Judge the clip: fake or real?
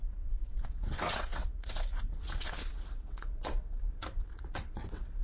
fake